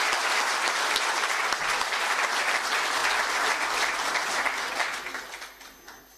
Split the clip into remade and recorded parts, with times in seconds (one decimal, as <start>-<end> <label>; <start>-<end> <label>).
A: 0.0-6.2 recorded